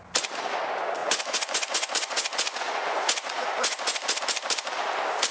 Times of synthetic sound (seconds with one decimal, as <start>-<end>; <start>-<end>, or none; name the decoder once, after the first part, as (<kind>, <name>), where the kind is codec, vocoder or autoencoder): 1.0-4.2 (vocoder, Vocos)